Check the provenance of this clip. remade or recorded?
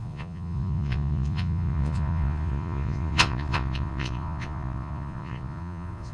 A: remade